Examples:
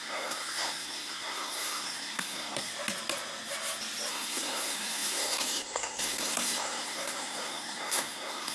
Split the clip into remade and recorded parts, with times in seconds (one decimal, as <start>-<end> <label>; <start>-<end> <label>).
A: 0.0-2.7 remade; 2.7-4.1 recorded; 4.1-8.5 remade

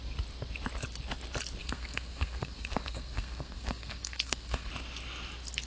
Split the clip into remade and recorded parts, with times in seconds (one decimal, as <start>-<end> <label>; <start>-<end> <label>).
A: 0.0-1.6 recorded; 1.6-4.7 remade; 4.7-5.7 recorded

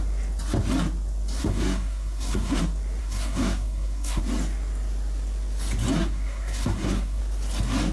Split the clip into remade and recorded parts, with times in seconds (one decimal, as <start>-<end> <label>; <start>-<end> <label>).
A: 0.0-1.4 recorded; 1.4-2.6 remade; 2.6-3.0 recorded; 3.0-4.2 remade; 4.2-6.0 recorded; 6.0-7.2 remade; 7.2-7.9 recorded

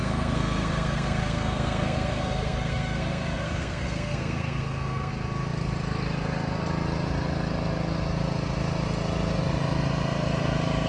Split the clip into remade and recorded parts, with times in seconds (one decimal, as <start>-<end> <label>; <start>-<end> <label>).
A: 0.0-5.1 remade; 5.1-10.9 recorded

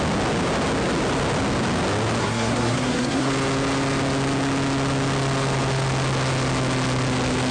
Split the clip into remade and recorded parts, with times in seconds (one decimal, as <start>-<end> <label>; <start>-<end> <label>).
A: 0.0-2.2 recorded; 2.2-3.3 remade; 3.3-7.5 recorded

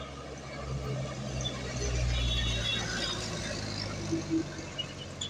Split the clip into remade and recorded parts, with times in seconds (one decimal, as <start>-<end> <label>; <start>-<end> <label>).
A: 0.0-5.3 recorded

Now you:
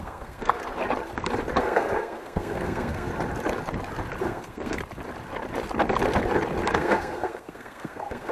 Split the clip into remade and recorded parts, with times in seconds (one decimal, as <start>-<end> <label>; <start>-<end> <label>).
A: 0.0-0.6 remade; 0.6-1.6 recorded; 1.6-3.1 remade; 3.1-4.2 recorded; 4.2-4.8 remade; 4.8-6.7 recorded; 6.7-8.3 remade